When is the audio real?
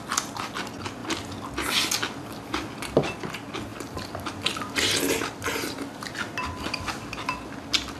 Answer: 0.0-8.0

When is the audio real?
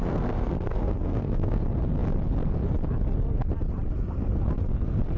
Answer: 1.6-5.2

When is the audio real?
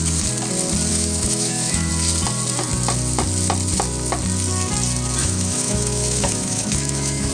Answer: 0.0-0.9; 1.9-5.2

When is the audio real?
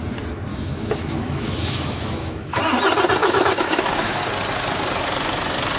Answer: 0.0-0.5; 2.6-3.2; 4.2-5.8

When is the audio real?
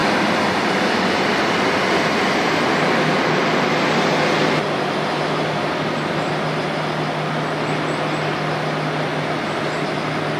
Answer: 0.0-10.4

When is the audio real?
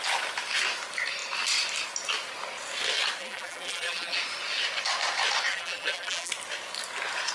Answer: 0.0-3.2; 4.2-5.5; 6.3-7.3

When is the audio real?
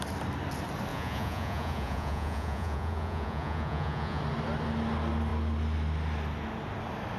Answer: 0.0-0.9; 4.2-7.2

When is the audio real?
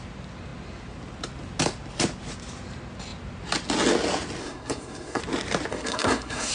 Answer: 0.0-4.4; 5.2-5.7